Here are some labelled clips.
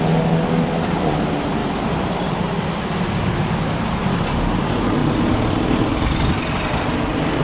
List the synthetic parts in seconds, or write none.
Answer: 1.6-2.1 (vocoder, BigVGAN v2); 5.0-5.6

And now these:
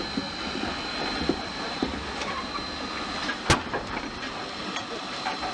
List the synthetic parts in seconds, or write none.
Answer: none

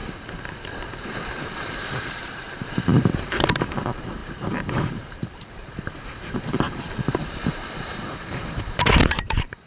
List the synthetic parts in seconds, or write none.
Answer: 0.0-9.7 (vocoder, BigVGAN v2)

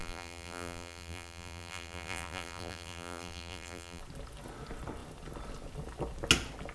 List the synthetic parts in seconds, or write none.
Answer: 0.0-4.0 (vocoder, BigVGAN v2)